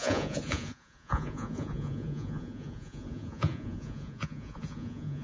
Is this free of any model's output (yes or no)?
no